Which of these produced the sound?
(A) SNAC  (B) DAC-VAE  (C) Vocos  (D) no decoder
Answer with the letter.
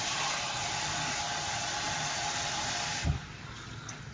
D